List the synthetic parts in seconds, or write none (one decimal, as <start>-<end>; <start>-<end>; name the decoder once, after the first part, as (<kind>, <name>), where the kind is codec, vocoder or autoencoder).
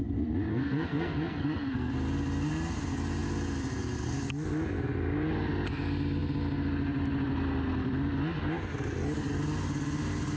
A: 0.5-1.9 (codec, SNAC)